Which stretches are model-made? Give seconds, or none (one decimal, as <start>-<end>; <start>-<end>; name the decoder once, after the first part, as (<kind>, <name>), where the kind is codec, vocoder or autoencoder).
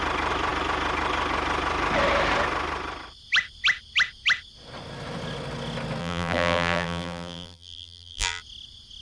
6.0-8.4 (vocoder, BigVGAN v2)